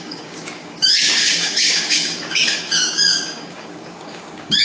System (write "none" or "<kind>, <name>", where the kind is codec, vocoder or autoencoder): codec, DAC